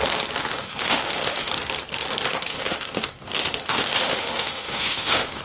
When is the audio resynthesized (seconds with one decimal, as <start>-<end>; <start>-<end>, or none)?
0.5-1.5; 2.5-5.4